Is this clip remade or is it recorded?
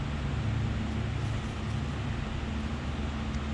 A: recorded